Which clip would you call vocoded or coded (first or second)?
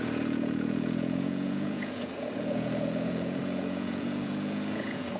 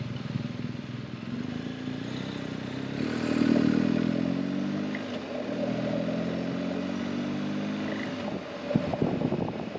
first